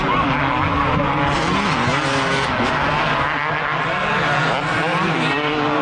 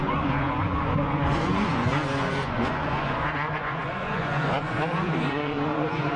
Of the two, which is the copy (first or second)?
second